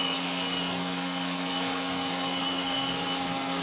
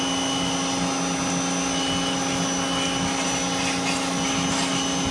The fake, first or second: first